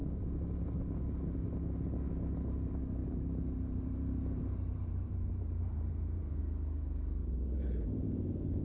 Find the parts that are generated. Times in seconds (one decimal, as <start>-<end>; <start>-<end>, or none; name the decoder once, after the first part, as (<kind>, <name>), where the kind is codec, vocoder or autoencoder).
3.0-6.4 (vocoder, BigVGAN v2); 7.2-8.6